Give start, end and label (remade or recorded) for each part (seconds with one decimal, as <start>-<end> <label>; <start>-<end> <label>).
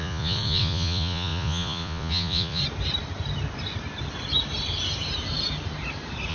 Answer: 0.0-2.6 remade; 2.6-6.3 recorded